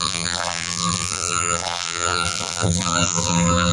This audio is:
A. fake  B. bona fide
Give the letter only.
A